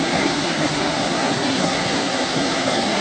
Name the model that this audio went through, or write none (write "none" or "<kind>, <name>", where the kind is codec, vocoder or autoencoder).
codec, SNAC